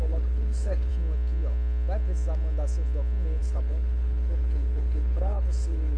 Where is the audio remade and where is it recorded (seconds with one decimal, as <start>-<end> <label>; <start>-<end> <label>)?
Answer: 0.0-0.9 remade; 0.9-3.4 recorded; 3.4-6.0 remade